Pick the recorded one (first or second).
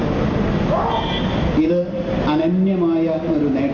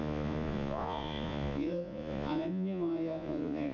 first